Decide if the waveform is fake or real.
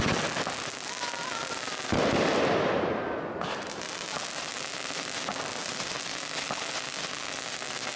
real